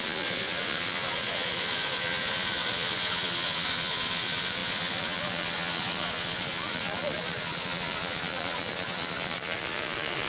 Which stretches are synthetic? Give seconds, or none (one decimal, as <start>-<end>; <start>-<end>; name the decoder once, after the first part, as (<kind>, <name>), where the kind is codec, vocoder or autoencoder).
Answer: 0.0-10.3 (vocoder, Vocos)